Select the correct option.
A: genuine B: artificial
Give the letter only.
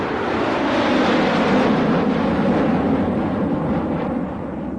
A